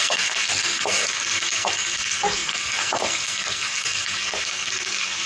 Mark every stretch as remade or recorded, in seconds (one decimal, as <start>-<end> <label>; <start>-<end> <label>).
0.0-5.3 remade